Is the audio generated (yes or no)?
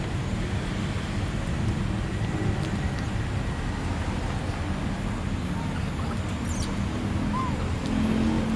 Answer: no